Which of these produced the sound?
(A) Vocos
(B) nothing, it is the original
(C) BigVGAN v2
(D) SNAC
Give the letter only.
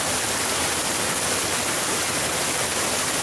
B